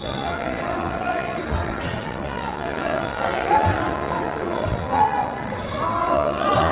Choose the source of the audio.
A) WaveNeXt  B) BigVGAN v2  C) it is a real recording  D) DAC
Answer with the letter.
A